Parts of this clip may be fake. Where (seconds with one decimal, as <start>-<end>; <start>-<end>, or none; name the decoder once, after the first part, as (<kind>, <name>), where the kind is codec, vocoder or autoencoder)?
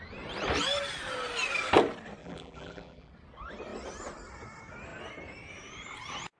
2.2-3.1 (vocoder, BigVGAN v2)